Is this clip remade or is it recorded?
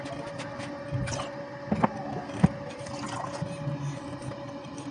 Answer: recorded